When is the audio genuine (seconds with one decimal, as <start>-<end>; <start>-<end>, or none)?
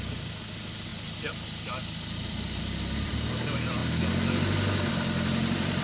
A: 3.8-4.9